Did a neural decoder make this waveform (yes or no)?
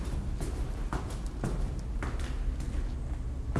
no